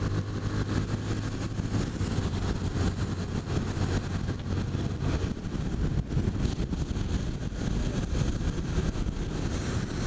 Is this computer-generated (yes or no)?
no